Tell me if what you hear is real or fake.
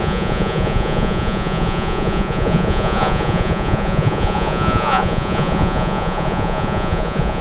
fake